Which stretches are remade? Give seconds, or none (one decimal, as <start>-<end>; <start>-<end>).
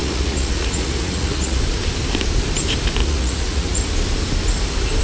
0.0-1.6; 3.0-3.8